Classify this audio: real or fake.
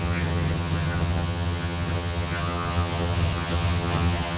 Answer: fake